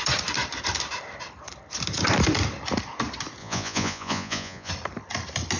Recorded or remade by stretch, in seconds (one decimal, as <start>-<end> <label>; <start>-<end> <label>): 0.0-3.4 recorded; 3.4-4.7 remade; 4.7-5.6 recorded